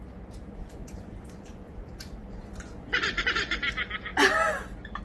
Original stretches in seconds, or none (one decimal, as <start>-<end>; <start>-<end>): 0.0-0.6; 3.6-5.0